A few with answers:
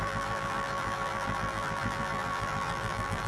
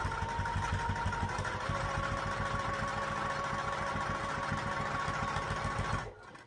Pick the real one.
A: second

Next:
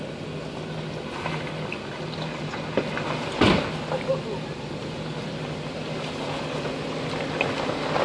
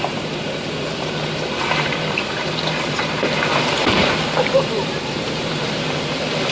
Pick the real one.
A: first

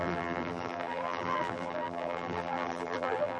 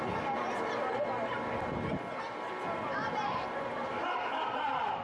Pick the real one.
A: second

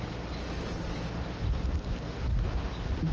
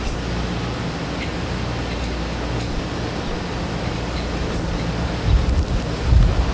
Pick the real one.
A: first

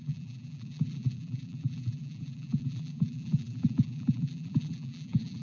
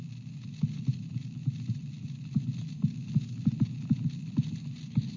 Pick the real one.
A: second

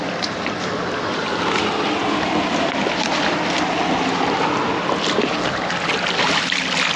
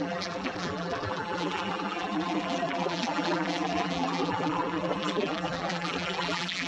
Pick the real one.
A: first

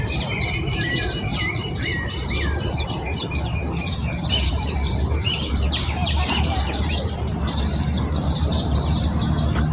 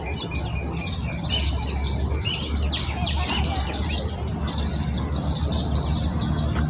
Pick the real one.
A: second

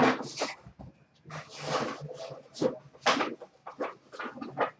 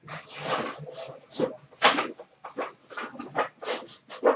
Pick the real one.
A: first